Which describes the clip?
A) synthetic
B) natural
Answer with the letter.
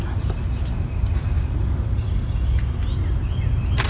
B